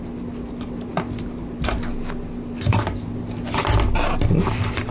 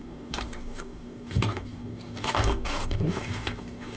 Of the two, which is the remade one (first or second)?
second